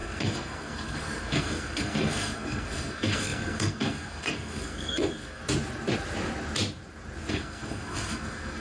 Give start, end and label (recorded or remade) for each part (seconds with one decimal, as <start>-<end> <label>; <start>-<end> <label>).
0.0-5.4 remade; 5.4-7.3 recorded; 7.3-8.6 remade